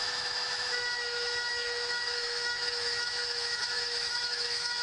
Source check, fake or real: fake